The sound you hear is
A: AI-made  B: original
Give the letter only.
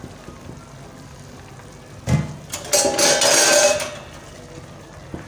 B